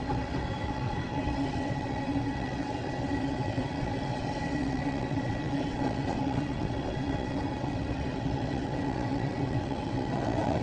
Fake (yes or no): yes